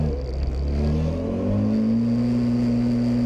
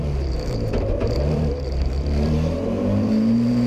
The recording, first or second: first